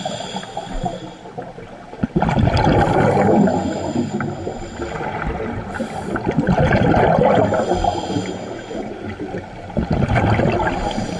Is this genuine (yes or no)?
yes